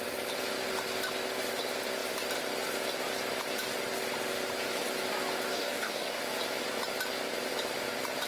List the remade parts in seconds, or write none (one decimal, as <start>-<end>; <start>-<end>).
5.5-6.2